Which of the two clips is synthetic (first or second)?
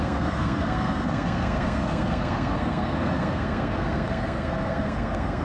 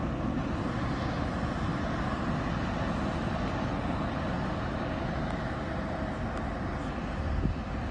first